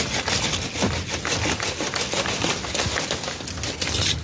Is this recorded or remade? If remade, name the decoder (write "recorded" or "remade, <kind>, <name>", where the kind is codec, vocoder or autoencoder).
recorded